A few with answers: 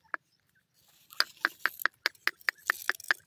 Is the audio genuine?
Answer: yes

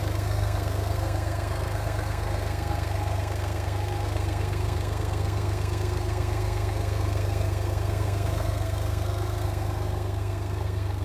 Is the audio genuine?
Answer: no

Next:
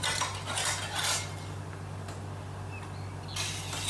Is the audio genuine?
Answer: yes